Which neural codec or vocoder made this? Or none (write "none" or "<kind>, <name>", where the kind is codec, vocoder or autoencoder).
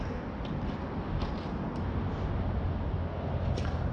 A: none